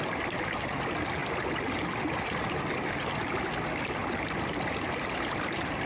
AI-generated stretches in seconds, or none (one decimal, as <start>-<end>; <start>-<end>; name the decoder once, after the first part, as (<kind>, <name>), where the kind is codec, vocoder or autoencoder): none